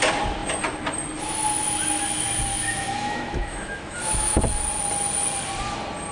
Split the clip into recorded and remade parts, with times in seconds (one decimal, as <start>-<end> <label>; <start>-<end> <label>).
0.0-2.5 recorded; 2.5-4.4 remade; 4.4-6.1 recorded